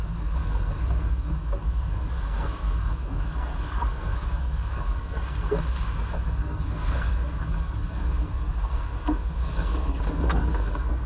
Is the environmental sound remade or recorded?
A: remade